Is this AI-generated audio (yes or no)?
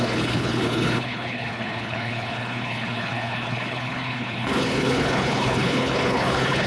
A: yes